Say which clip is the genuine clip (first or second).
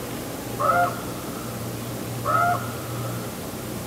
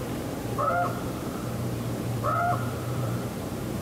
first